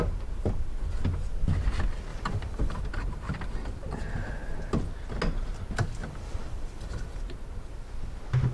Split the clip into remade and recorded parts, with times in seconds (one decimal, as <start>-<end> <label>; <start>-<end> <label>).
0.0-2.1 recorded; 2.1-2.8 remade; 2.8-6.0 recorded; 6.0-7.2 remade; 7.2-8.5 recorded